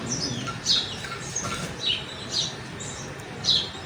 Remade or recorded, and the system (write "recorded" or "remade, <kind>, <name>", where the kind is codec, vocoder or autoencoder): recorded